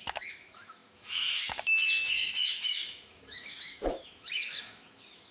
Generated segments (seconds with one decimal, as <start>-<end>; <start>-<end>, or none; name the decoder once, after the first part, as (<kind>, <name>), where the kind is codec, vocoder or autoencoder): 0.0-5.3 (autoencoder, DAC-VAE)